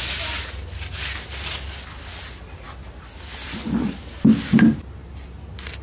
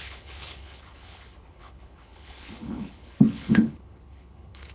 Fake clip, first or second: second